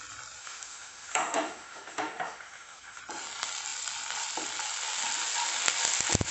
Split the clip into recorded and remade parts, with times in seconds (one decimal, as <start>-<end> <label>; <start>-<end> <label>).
0.0-0.4 recorded; 0.4-3.0 remade; 3.0-6.3 recorded